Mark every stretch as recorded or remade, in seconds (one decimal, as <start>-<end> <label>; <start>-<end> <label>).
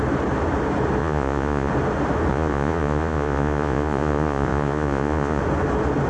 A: 0.0-1.0 recorded; 1.0-1.7 remade; 1.7-2.3 recorded; 2.3-5.4 remade; 5.4-6.1 recorded